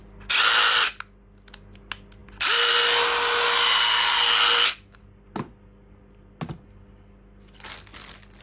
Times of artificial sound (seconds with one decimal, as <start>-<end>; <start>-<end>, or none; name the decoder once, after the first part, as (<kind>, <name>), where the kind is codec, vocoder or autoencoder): none